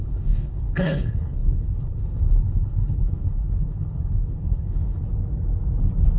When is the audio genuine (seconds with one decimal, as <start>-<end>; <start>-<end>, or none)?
5.0-6.2